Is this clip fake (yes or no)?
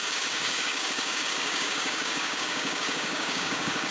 yes